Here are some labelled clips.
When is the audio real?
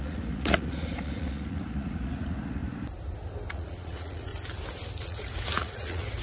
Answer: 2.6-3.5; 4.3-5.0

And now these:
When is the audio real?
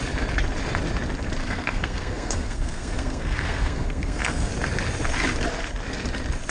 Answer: 0.0-1.4; 4.5-6.5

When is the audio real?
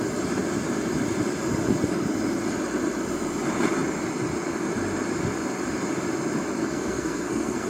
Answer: 0.0-6.6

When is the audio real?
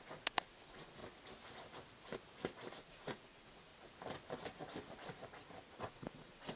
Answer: 1.0-2.8; 3.7-5.8